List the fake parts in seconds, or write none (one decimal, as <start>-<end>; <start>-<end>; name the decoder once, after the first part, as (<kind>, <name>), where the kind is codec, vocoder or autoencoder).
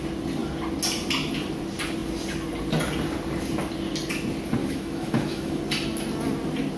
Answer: 4.6-5.6 (autoencoder, DAC-VAE)